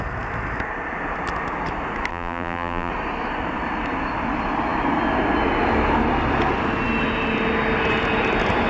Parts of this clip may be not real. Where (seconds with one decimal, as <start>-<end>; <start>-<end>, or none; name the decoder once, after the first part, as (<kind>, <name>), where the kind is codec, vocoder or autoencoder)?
2.1-2.9 (vocoder, BigVGAN v2)